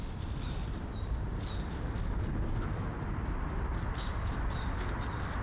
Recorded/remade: recorded